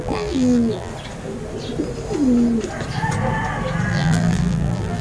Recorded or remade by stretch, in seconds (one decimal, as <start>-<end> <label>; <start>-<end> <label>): 0.0-0.9 remade; 0.9-3.9 recorded; 3.9-5.0 remade